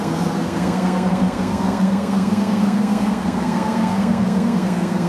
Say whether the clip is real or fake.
fake